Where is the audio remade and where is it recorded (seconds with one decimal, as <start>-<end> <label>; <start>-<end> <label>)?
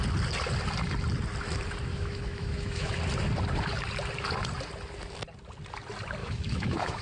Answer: 0.0-1.9 recorded; 1.9-2.9 remade; 2.9-6.2 recorded; 6.2-7.0 remade